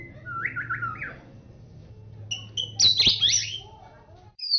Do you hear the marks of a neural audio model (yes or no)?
no